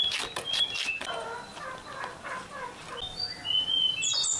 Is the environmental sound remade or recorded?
recorded